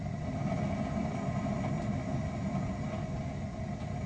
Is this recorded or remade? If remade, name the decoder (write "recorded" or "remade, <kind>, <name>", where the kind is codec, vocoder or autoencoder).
recorded